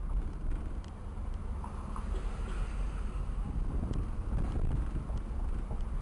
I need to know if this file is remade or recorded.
recorded